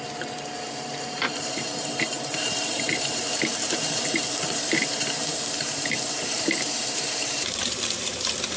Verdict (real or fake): fake